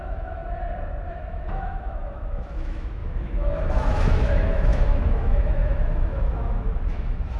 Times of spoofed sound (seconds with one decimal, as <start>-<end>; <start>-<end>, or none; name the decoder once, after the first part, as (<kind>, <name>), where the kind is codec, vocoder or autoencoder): 0.0-0.4 (autoencoder, DAC-VAE); 1.1-7.4